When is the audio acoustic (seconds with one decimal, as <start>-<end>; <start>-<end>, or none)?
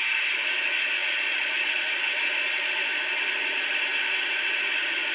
0.0-5.1